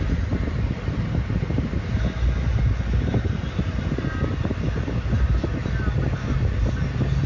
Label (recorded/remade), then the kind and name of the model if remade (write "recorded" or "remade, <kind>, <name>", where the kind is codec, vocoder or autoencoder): recorded